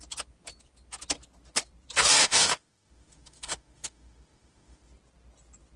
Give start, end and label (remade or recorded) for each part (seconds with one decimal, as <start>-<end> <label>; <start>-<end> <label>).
0.0-2.2 recorded; 2.2-4.9 remade; 4.9-5.8 recorded